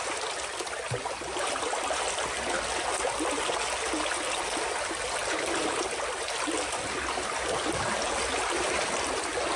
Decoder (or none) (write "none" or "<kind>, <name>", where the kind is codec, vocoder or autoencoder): none